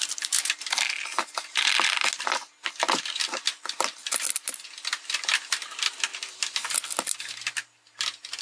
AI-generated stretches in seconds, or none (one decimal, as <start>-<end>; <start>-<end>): none